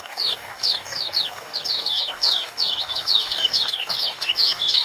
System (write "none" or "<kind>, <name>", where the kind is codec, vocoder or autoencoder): codec, DAC